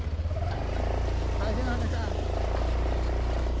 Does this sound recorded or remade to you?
recorded